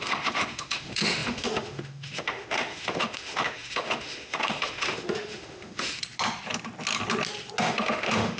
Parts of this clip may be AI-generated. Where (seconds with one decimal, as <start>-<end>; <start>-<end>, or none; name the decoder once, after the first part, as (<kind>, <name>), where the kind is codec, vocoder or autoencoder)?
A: 0.0-6.0 (autoencoder, DAC-VAE); 7.6-8.4